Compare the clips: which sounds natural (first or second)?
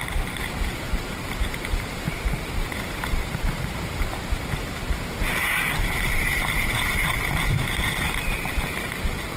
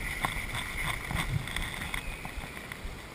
second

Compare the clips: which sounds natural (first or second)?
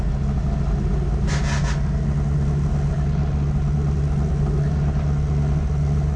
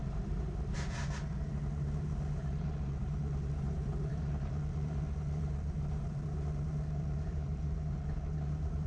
first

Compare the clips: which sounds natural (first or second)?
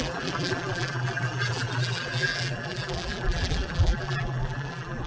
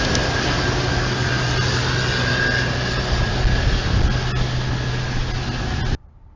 second